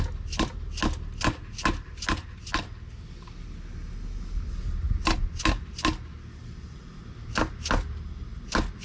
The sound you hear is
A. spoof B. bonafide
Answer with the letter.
B